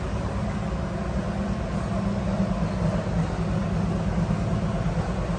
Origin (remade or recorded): recorded